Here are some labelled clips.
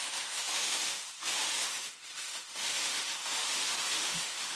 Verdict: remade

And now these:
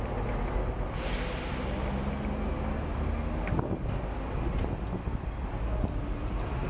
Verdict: recorded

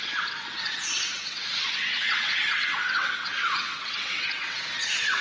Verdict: remade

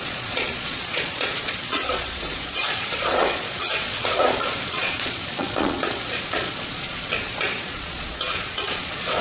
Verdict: remade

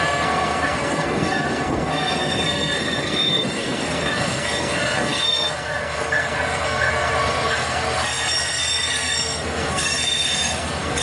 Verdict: remade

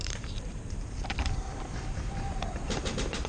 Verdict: remade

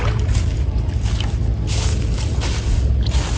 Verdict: recorded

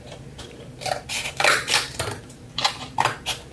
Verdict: remade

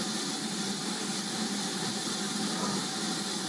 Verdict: recorded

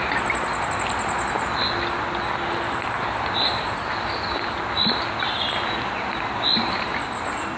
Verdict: recorded